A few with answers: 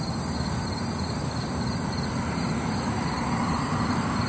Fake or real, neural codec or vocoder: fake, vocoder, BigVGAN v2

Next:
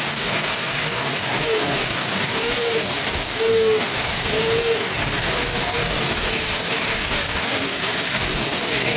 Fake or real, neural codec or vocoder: fake, codec, DAC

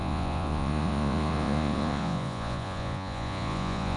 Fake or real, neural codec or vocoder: fake, vocoder, Vocos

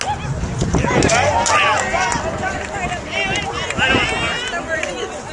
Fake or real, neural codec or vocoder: real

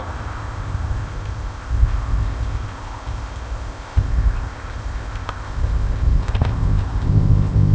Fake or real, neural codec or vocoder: fake, codec, ZipCodec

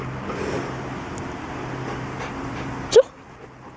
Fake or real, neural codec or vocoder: real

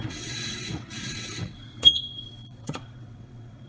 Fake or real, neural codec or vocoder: fake, vocoder, WaveNeXt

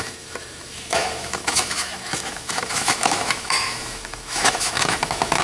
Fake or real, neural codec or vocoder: fake, autoencoder, DAC-VAE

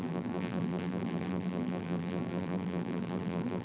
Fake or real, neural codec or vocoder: fake, vocoder, BigVGAN v2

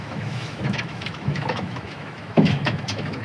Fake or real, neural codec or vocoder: fake, autoencoder, DAC-VAE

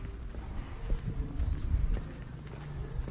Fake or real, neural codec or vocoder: real